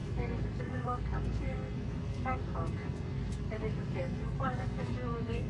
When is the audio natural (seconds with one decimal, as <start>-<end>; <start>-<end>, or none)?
none

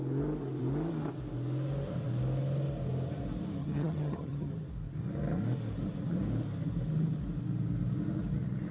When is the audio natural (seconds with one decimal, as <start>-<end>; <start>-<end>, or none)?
0.0-3.6; 4.5-8.7

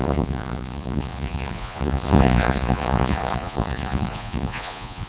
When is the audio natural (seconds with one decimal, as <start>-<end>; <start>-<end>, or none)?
none

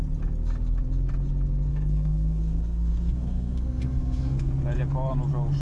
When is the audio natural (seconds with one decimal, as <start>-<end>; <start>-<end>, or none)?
0.0-1.7; 4.5-5.6

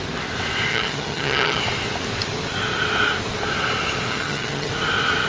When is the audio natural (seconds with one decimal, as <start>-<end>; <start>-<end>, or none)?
0.0-0.7; 1.6-4.1; 4.7-5.3